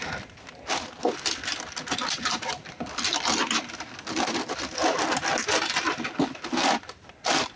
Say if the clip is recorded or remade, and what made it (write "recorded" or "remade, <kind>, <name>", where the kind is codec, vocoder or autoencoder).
recorded